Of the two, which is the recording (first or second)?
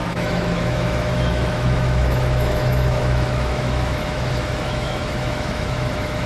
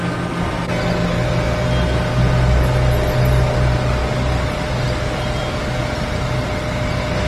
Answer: second